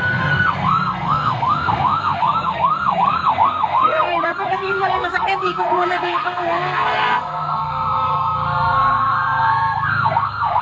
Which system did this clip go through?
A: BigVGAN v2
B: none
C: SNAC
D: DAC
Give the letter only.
C